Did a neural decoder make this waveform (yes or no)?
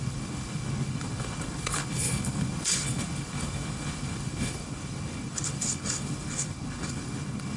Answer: yes